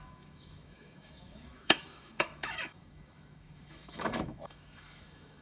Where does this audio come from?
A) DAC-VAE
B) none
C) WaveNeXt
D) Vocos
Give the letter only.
A